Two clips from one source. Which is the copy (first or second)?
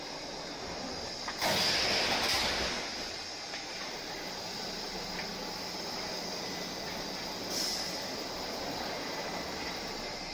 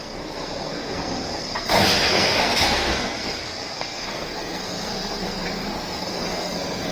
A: second